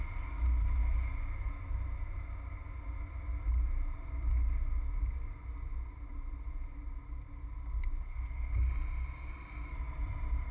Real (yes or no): yes